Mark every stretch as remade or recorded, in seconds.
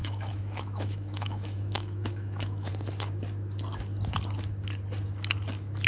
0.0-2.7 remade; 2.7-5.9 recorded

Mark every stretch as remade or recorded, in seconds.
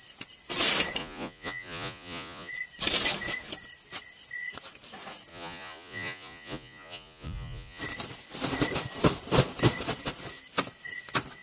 0.0-1.0 recorded; 1.0-2.5 remade; 2.5-5.3 recorded; 5.3-7.8 remade; 7.8-11.4 recorded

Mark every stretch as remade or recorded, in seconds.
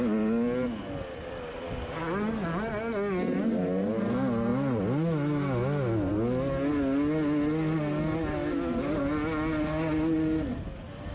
0.0-11.1 recorded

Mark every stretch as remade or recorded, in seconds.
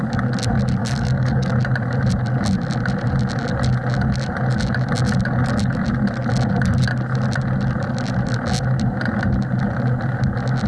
0.0-0.8 recorded; 0.8-1.5 remade; 1.5-10.7 recorded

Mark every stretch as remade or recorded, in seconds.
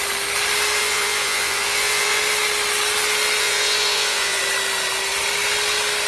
0.0-0.8 recorded; 0.8-2.2 remade; 2.2-3.4 recorded; 3.4-4.4 remade; 4.4-6.1 recorded